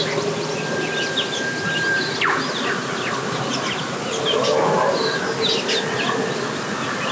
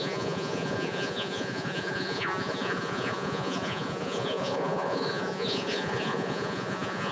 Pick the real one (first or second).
first